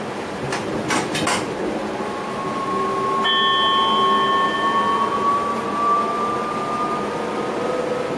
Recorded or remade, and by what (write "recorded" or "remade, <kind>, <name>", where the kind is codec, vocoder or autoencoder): recorded